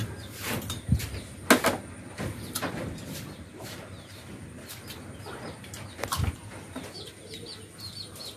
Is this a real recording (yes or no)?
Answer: yes